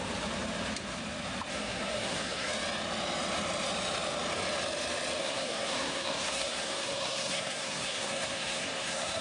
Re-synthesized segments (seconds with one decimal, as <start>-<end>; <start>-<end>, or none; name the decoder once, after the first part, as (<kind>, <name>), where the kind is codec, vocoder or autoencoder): 1.5-2.5 (codec, SNAC); 5.2-9.2